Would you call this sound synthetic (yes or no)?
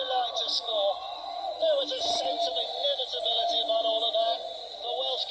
no